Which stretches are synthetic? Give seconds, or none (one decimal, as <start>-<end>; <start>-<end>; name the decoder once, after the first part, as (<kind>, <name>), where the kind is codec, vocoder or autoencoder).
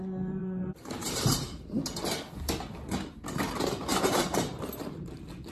0.4-1.8 (vocoder, BigVGAN v2); 3.9-5.1